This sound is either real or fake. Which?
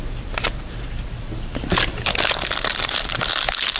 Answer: real